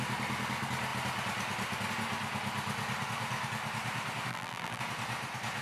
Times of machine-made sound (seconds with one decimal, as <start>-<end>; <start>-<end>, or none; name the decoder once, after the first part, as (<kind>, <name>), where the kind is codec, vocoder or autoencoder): 4.3-4.8 (vocoder, BigVGAN v2)